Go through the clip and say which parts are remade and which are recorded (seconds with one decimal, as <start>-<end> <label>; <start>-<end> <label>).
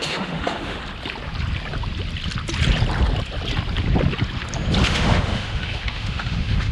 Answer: 0.0-0.8 remade; 0.8-4.8 recorded; 4.8-6.7 remade